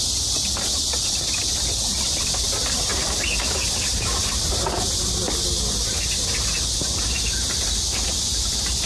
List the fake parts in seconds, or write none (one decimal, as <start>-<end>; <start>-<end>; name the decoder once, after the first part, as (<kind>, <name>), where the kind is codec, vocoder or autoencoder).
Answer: none